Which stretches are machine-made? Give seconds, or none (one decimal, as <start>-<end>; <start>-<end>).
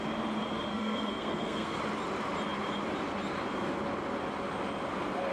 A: 0.7-1.8